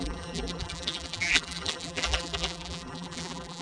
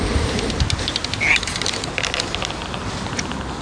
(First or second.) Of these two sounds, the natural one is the second